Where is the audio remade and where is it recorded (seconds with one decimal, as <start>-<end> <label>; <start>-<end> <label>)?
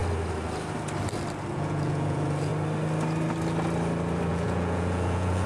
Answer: 0.0-1.5 recorded; 1.5-2.5 remade; 2.5-4.3 recorded; 4.3-5.5 remade